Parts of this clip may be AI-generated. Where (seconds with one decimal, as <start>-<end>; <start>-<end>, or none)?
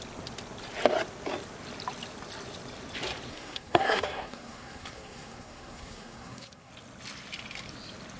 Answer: 3.3-6.7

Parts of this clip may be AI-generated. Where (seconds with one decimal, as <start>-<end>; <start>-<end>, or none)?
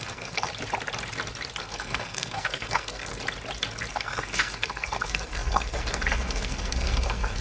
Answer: 0.0-0.5; 1.6-3.1; 3.9-7.4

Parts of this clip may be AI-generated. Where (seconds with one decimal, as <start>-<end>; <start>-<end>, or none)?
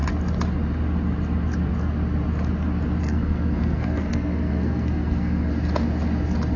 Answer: 3.0-5.5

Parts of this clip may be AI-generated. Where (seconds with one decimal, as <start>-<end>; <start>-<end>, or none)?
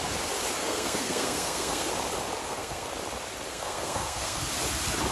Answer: 0.6-1.9; 2.4-2.9; 3.5-4.4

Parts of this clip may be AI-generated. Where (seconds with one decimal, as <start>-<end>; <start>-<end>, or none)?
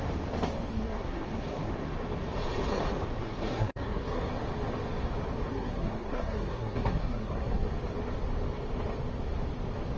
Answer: 0.7-1.7; 3.2-4.3; 5.5-7.7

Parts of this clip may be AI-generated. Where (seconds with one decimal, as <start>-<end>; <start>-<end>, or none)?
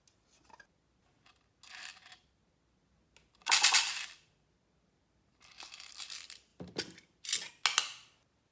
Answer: none